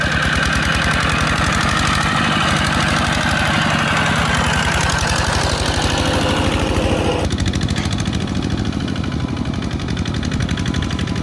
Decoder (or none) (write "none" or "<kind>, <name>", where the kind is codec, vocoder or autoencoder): none